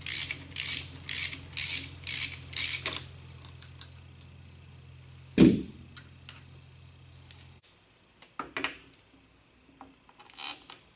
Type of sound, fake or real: real